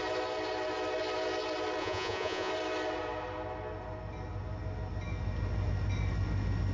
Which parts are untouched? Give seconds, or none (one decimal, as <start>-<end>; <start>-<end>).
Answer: 0.0-1.8; 2.5-6.7